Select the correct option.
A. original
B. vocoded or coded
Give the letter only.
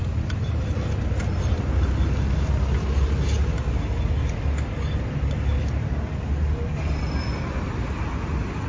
A